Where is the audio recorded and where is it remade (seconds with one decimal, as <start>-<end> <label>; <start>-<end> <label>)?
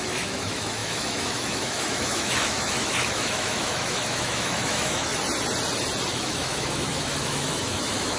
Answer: 0.0-5.1 remade; 5.1-6.1 recorded; 6.1-8.2 remade